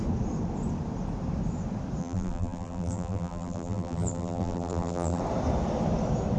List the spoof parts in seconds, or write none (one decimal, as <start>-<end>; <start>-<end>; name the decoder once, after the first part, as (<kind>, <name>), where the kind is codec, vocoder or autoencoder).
2.0-5.2 (vocoder, BigVGAN v2)